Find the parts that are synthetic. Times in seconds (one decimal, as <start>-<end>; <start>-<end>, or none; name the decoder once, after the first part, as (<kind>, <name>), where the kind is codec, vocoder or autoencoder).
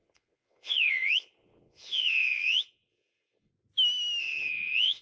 0.0-3.5 (vocoder, Vocos); 4.2-5.0